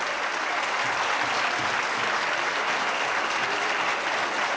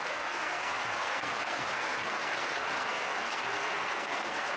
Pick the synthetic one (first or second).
second